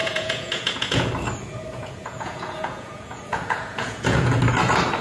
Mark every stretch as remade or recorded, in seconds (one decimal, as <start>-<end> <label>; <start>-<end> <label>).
0.0-1.1 remade; 1.1-1.7 recorded; 1.7-4.4 remade; 4.4-5.0 recorded